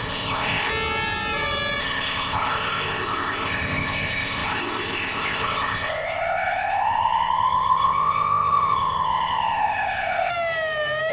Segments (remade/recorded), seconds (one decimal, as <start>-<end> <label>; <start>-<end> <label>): 0.0-0.7 remade; 0.7-1.8 recorded; 1.8-10.3 remade; 10.3-11.1 recorded